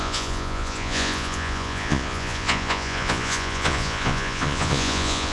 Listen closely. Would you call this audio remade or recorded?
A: remade